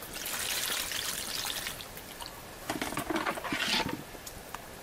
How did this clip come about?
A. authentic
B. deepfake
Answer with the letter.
A